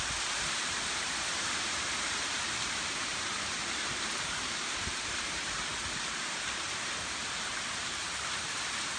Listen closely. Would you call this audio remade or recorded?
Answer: remade